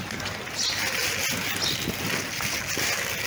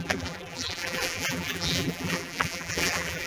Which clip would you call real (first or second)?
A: first